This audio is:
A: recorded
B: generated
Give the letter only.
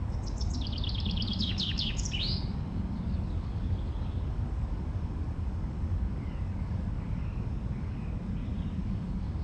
B